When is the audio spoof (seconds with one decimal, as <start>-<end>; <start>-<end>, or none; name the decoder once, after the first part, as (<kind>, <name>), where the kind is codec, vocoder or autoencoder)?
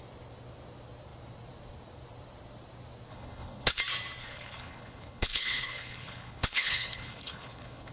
3.1-3.8 (codec, HILCodec); 4.2-7.9